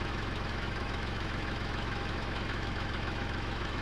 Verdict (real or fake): fake